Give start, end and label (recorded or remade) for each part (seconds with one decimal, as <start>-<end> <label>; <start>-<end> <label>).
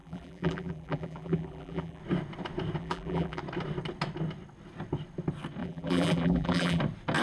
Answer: 0.0-2.0 remade; 2.0-2.8 recorded; 2.8-3.4 remade; 3.4-5.6 recorded; 5.6-6.8 remade; 6.8-7.2 recorded